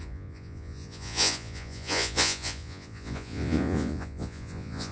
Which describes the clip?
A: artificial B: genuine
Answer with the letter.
A